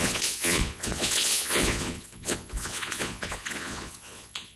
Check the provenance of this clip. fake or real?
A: fake